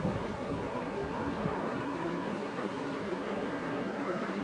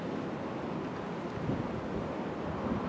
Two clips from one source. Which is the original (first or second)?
second